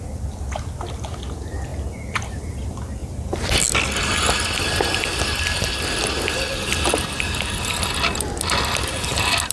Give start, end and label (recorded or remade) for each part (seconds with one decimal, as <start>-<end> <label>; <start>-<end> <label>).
0.0-9.5 recorded